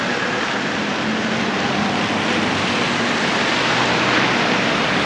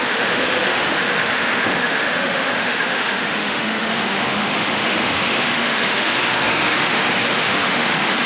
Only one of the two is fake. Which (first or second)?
second